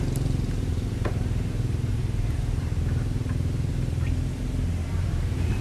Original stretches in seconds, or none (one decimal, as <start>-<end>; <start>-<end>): 0.0-1.9; 2.6-4.8